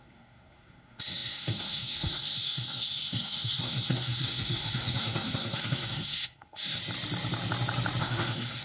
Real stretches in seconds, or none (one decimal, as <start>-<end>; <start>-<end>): 6.8-8.0